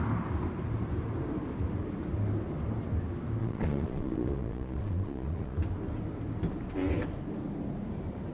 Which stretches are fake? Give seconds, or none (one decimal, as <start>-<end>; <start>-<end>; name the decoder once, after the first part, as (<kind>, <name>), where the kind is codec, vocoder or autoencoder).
3.4-5.6 (vocoder, Vocos)